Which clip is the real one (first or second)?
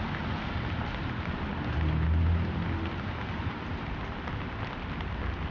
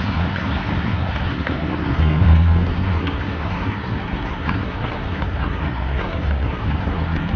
first